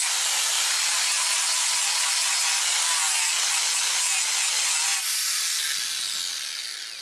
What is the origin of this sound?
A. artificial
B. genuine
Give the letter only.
B